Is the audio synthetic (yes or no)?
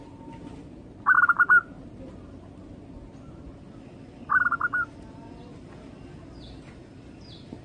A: no